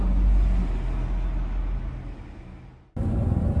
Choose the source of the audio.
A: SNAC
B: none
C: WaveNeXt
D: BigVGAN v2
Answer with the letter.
B